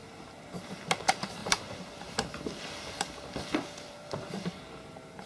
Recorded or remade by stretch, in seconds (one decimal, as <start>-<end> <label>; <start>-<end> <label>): 0.0-1.4 recorded; 1.4-4.6 remade; 4.6-5.3 recorded